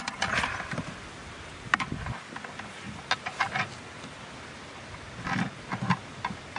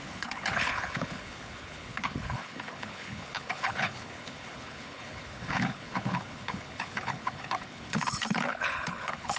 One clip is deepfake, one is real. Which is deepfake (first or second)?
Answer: second